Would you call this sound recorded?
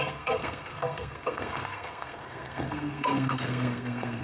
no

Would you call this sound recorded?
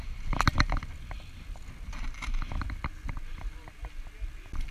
yes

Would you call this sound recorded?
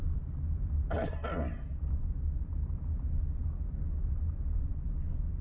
yes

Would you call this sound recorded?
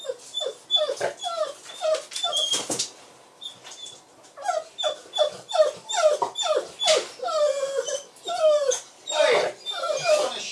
yes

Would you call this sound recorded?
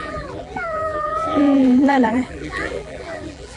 no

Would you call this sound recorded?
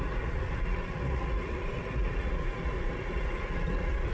no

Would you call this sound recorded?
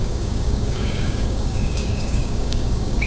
no